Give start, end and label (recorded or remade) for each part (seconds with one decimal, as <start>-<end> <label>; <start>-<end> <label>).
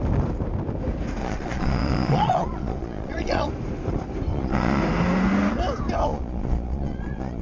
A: 0.0-1.2 recorded; 1.2-3.5 remade; 3.5-4.3 recorded; 4.3-4.8 remade; 4.8-6.1 recorded; 6.1-7.4 remade